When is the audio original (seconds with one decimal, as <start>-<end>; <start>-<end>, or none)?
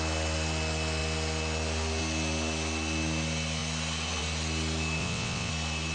0.0-5.0; 5.5-5.9